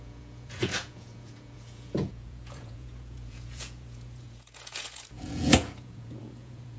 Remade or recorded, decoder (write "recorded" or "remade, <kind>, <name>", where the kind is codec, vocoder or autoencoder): remade, vocoder, Vocos